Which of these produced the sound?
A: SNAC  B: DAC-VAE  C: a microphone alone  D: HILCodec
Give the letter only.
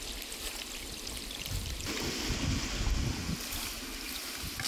C